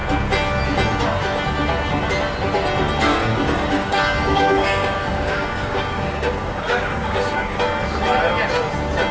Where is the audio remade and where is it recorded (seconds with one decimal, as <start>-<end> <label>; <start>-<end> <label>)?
0.0-3.1 recorded; 3.1-7.6 remade; 7.6-9.1 recorded